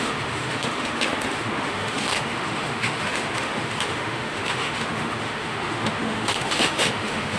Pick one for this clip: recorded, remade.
remade